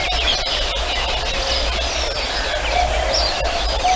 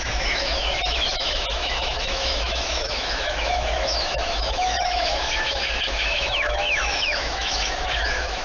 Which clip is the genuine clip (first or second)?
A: first